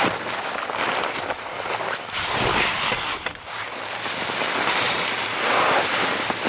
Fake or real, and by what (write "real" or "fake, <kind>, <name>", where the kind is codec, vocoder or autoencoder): real